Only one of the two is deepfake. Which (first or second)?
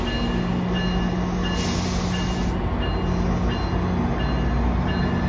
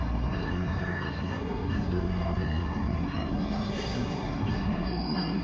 second